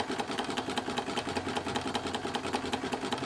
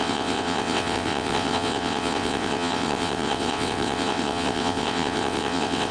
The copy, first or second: second